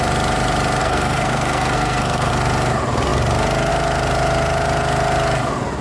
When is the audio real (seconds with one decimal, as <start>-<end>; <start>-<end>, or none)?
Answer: 0.0-0.8; 2.3-5.8